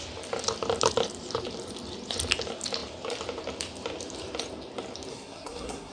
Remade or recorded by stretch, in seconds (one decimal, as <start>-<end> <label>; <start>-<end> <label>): 0.0-5.1 recorded; 5.1-5.9 remade